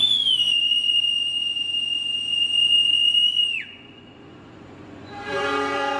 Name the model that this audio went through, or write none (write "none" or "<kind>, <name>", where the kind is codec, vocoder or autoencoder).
vocoder, Vocos